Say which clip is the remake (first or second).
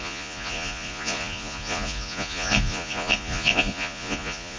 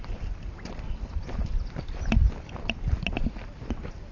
first